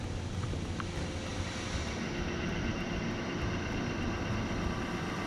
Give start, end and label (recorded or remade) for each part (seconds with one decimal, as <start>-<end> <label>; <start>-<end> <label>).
0.0-1.3 recorded; 1.3-2.1 remade; 2.1-2.7 recorded; 2.7-5.3 remade